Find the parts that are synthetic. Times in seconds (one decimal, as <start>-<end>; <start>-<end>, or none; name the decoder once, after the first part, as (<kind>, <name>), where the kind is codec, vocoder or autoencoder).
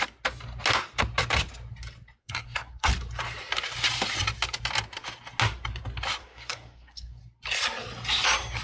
2.2-2.9 (codec, SNAC); 6.2-7.2